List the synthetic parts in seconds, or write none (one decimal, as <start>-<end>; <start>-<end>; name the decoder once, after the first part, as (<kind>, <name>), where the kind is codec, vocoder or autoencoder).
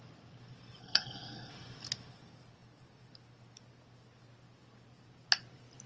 0.8-1.5 (codec, SNAC)